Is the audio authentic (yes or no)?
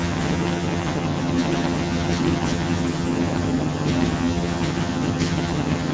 no